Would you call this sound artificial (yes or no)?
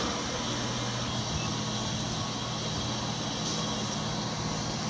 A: no